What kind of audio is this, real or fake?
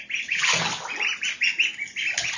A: real